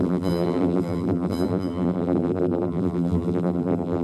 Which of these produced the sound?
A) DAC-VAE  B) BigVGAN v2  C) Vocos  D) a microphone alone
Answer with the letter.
B